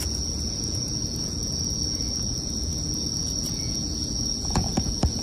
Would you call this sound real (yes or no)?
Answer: no